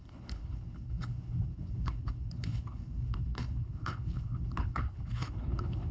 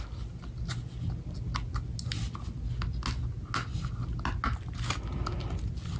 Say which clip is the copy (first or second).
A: first